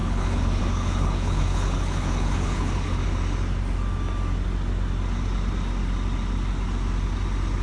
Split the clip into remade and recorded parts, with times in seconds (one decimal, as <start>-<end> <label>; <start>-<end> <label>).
0.0-3.0 remade; 3.0-7.6 recorded